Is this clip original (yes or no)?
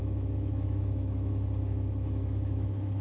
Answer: no